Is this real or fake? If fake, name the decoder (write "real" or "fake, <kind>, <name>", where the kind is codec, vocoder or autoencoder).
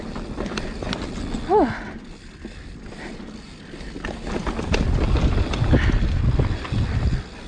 real